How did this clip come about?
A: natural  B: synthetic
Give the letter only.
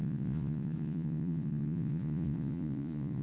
B